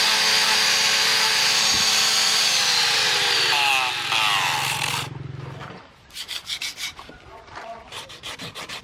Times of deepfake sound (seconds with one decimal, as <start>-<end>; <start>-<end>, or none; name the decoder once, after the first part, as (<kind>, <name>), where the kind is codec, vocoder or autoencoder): 0.4-3.7 (vocoder, BigVGAN v2)